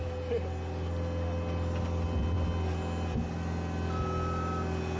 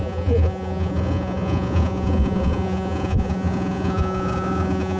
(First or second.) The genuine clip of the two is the first